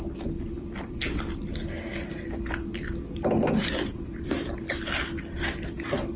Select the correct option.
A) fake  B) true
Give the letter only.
B